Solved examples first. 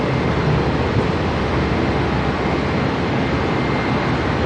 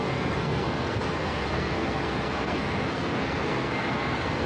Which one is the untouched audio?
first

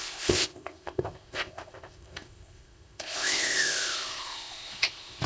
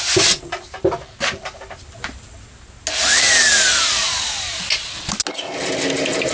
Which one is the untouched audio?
second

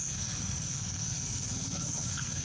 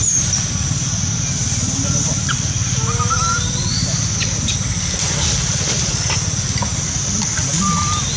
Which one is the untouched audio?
second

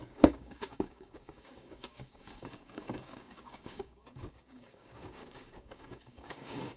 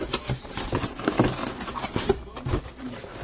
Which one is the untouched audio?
second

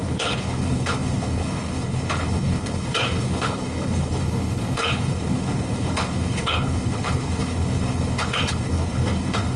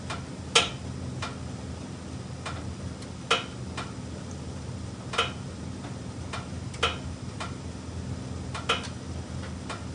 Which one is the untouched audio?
second